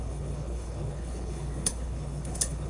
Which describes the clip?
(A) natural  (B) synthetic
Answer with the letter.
B